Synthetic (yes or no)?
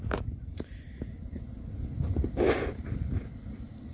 yes